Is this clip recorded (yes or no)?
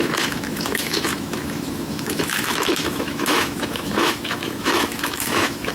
no